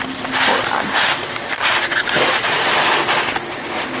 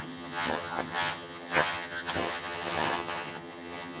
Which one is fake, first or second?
second